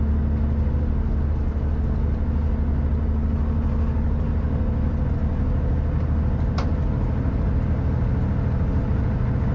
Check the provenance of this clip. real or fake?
real